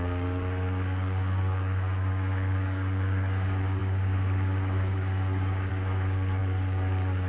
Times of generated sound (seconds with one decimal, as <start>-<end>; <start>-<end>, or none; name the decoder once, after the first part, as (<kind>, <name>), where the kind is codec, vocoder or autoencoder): 0.0-7.3 (codec, DAC)